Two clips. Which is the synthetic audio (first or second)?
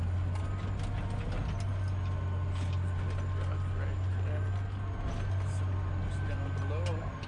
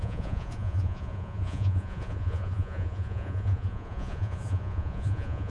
second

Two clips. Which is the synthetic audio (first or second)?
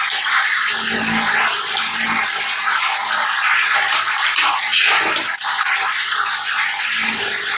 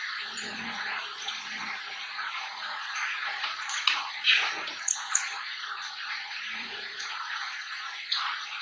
second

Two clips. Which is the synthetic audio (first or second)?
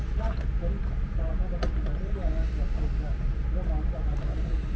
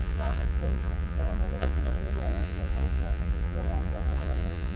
second